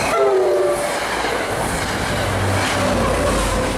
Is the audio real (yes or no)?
yes